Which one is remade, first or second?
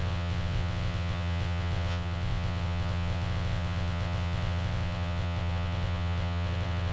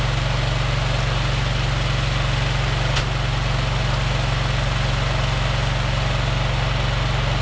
first